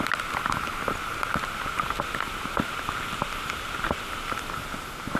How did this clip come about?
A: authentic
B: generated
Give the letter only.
A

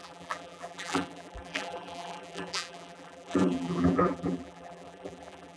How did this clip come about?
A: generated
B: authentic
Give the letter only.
A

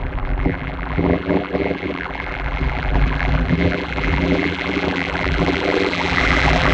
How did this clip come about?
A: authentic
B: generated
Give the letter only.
B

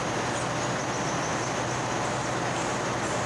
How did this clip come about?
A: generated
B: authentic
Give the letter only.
B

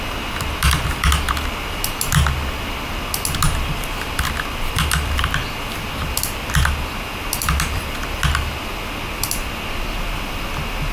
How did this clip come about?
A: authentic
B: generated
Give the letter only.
A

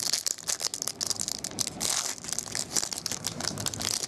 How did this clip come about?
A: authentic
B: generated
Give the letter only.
A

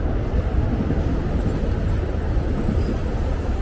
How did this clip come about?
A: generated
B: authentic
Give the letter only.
B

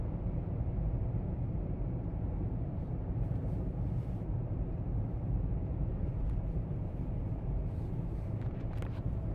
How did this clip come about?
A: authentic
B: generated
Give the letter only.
B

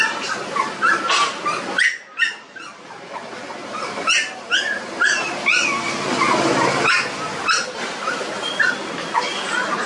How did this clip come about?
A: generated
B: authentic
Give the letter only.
B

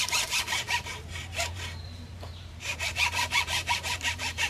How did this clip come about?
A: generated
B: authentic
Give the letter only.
A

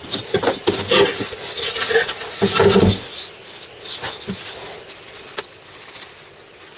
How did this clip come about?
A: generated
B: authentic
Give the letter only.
B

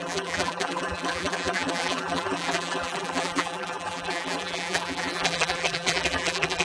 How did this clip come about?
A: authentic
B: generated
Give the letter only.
B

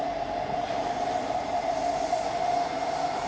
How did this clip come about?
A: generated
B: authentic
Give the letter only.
A